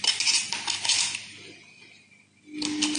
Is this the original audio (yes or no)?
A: yes